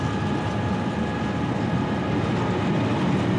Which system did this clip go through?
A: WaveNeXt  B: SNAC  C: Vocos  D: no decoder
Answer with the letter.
D